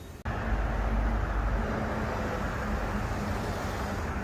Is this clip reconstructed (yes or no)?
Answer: no